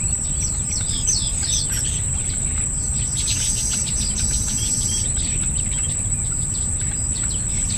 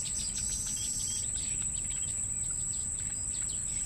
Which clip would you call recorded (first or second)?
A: second